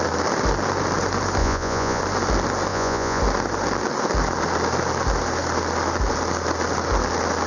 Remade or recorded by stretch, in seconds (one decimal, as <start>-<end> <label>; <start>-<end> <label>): 0.0-1.4 recorded; 1.4-2.0 remade; 2.0-2.7 recorded; 2.7-3.2 remade; 3.2-7.5 recorded